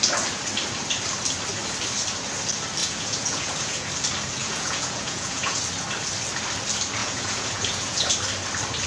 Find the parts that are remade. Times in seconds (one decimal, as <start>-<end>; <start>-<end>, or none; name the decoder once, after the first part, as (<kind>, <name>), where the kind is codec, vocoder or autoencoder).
2.8-3.9 (vocoder, Vocos); 4.4-5.6; 7.0-8.1